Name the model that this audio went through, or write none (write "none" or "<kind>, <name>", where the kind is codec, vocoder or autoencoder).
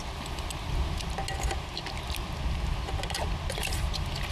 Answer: none